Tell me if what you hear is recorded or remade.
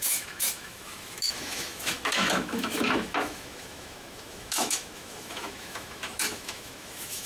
remade